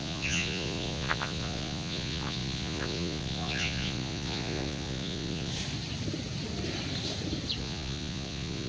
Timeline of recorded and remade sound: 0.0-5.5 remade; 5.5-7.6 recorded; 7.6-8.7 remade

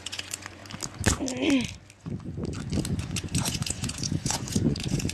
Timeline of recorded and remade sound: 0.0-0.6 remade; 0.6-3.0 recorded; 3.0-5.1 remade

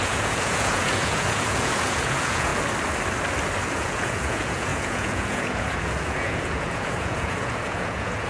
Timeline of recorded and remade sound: 0.0-2.5 remade; 2.5-3.7 recorded; 3.7-8.3 remade

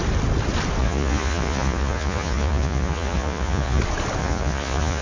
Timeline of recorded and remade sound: 0.0-0.8 recorded; 0.8-3.8 remade; 3.8-4.2 recorded; 4.2-5.0 remade

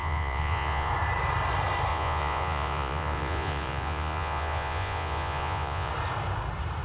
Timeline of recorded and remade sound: 0.0-0.9 remade; 0.9-1.9 recorded; 1.9-5.9 remade; 5.9-6.8 recorded

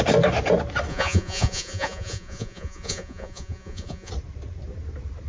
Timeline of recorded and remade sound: 0.0-0.9 recorded; 0.9-4.1 remade; 4.1-5.3 recorded

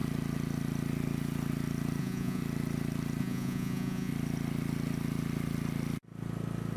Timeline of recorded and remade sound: 0.0-2.0 recorded; 2.0-2.4 remade; 2.4-3.2 recorded; 3.2-4.1 remade; 4.1-6.8 recorded